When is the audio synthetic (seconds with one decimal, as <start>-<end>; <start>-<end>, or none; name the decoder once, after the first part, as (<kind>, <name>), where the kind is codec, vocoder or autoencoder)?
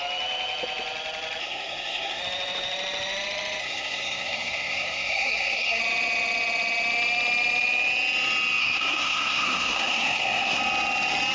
1.4-2.2 (codec, SNAC); 3.6-5.8; 8.6-10.6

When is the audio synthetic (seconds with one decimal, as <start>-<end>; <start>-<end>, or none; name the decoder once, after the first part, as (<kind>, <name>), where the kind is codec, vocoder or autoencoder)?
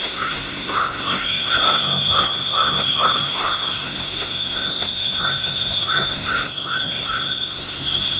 0.0-8.2 (codec, SNAC)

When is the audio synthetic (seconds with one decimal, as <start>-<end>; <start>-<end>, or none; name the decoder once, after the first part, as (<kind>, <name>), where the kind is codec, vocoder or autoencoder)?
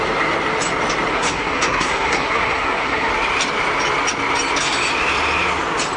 1.1-3.1 (codec, SNAC)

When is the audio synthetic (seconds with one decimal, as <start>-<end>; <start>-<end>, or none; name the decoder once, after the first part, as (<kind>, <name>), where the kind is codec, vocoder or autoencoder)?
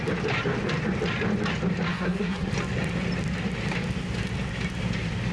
1.9-2.5 (codec, SNAC)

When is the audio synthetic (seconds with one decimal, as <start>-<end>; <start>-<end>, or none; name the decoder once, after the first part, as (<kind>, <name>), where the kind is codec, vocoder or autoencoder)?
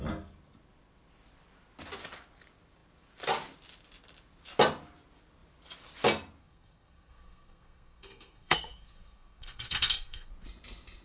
6.4-10.3 (codec, SNAC)